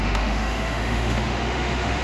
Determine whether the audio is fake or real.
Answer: fake